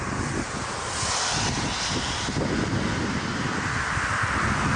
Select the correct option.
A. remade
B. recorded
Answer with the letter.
B